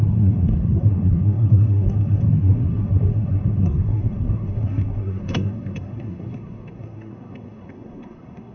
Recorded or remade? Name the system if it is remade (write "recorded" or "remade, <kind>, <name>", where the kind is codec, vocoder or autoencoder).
remade, codec, SNAC